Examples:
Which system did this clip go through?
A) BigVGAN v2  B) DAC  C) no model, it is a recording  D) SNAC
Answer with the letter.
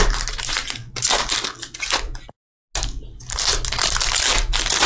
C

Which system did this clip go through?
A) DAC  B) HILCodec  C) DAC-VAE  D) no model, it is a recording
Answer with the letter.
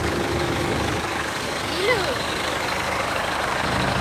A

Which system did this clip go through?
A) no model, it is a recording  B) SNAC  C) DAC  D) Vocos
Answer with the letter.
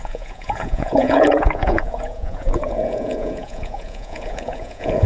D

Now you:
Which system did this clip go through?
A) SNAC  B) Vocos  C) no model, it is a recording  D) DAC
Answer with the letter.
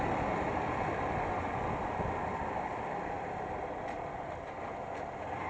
C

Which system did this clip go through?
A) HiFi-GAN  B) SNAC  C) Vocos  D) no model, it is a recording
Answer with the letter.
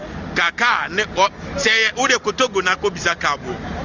D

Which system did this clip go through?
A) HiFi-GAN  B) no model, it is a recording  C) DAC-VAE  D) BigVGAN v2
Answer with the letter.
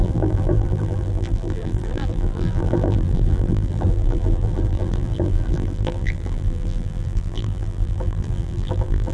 D